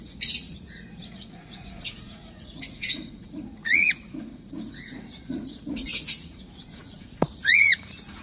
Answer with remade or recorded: remade